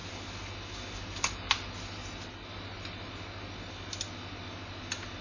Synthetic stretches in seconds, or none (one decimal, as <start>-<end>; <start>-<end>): none